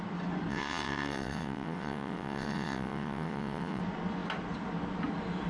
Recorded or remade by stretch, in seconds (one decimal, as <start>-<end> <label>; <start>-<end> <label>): 0.0-0.5 recorded; 0.5-3.8 remade; 3.8-5.5 recorded